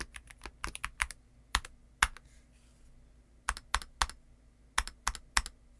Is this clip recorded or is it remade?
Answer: recorded